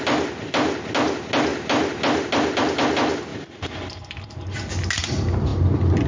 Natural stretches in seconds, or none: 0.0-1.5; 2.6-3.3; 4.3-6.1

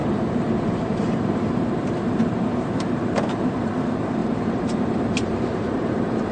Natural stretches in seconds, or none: 3.8-4.2

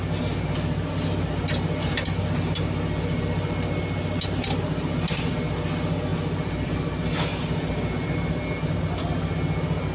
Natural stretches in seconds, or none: 0.0-6.1; 7.4-9.9